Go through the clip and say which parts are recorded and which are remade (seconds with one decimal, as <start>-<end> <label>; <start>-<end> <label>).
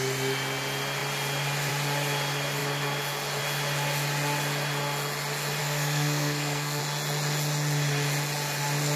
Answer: 0.0-5.6 recorded; 5.6-6.8 remade; 6.8-9.0 recorded